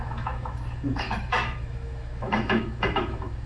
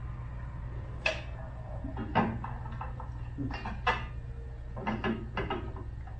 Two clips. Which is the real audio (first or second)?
second